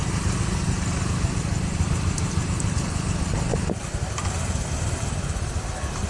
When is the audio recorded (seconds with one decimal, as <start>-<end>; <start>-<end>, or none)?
0.0-3.5; 4.3-6.1